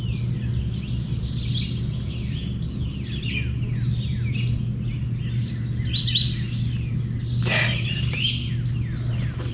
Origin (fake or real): real